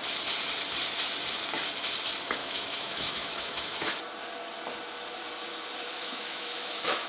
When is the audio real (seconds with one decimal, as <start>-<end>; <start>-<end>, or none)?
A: 0.0-2.4; 3.9-5.9